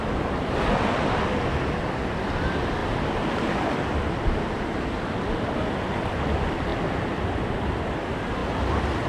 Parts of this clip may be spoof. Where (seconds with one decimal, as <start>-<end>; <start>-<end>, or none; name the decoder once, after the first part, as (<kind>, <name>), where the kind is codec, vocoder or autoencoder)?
0.0-0.8 (vocoder, BigVGAN v2); 6.7-7.2